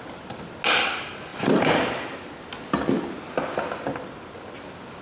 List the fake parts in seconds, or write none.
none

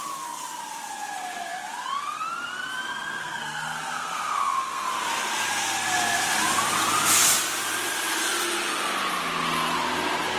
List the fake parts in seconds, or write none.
3.2-5.0 (codec, SNAC)

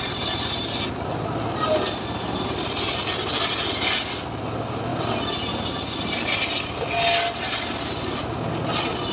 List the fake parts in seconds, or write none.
none

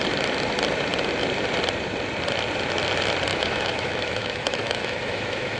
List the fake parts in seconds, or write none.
3.3-5.6 (autoencoder, DAC-VAE)

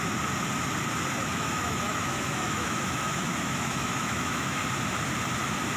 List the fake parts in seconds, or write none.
1.3-4.6 (autoencoder, DAC-VAE)

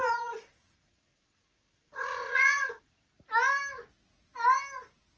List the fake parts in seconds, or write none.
0.0-3.1 (vocoder, Vocos)

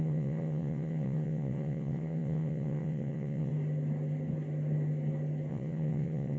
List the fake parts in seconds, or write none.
0.0-3.5 (vocoder, WaveNeXt); 5.5-6.4

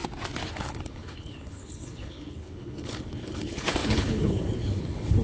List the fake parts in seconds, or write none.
0.5-5.2 (codec, HILCodec)